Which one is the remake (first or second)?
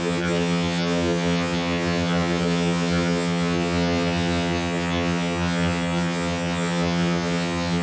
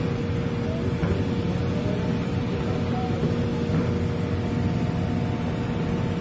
first